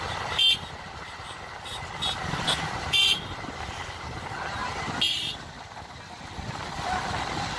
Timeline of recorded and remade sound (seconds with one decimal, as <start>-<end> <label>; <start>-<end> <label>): 0.0-4.6 remade; 4.6-7.6 recorded